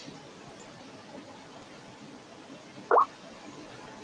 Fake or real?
fake